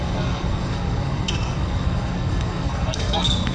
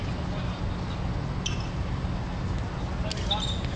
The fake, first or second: first